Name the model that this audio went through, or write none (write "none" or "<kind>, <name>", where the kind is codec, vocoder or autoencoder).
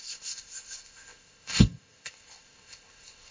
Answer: codec, ZipCodec